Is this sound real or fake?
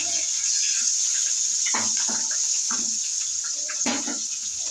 fake